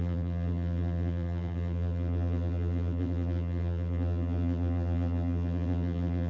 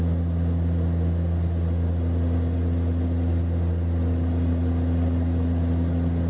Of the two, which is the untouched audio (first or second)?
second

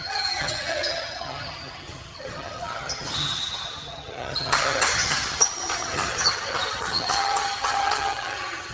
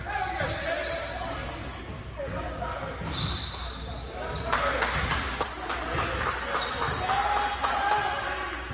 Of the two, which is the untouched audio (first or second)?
second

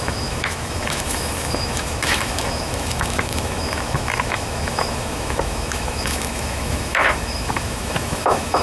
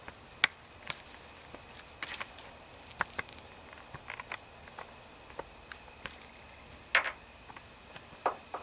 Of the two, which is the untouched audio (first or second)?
second